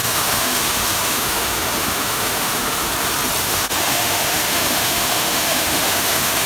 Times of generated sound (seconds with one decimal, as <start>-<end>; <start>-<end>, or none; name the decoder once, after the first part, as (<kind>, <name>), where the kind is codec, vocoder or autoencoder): 0.0-2.9 (autoencoder, DAC-VAE); 3.4-6.5